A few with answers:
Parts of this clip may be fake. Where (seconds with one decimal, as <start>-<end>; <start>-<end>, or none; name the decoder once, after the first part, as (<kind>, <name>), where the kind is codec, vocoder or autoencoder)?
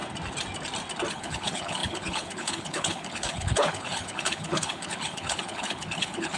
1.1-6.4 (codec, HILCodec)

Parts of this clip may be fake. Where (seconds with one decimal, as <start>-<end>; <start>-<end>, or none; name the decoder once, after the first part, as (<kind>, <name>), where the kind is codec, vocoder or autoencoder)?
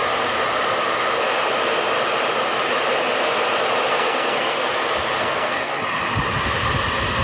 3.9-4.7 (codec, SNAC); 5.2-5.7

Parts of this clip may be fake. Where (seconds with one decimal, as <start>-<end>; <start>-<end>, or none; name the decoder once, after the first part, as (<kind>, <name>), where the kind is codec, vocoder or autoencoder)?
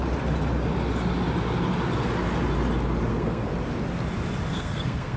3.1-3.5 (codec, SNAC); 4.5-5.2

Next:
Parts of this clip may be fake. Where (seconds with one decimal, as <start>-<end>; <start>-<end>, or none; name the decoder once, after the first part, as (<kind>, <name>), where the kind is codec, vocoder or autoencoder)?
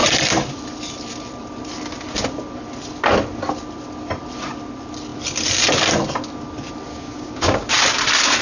6.9-7.7 (codec, DAC)